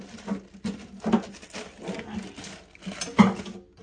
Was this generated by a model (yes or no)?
no